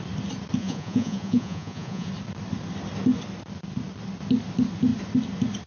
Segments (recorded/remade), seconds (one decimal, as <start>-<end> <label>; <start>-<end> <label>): 0.0-0.6 recorded; 0.6-2.1 remade; 2.1-5.7 recorded